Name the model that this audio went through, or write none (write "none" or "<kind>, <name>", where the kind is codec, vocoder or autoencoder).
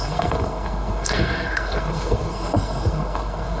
codec, SNAC